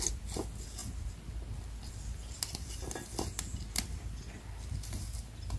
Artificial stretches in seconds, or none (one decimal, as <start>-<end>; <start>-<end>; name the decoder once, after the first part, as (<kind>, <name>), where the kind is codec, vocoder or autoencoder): none

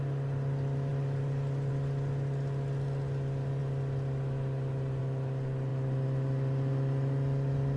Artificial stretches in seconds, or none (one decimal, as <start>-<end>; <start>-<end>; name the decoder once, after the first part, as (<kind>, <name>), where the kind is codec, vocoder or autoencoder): 0.9-1.7 (vocoder, BigVGAN v2); 5.7-7.8

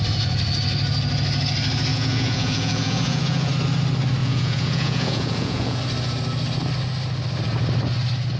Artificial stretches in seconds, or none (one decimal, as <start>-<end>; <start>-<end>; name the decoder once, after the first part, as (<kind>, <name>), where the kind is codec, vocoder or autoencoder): 1.9-3.5 (vocoder, Vocos); 4.2-5.8

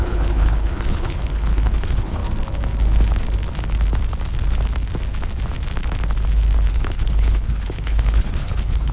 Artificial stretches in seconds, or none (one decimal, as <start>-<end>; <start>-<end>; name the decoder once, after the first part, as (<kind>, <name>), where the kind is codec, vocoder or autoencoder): 0.0-2.2 (codec, HILCodec); 6.7-8.9